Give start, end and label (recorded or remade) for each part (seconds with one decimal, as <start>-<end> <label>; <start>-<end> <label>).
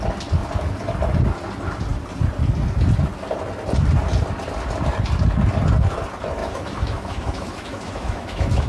0.0-6.4 recorded; 6.4-8.7 remade